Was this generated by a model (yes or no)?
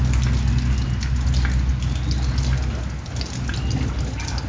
no